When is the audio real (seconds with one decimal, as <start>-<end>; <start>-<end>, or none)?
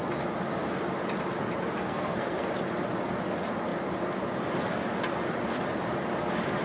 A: 0.0-1.8; 2.5-6.6